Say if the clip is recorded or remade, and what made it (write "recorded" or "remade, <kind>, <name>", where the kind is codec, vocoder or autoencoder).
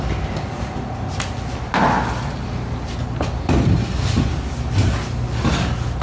recorded